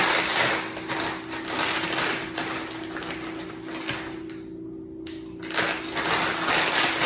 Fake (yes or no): no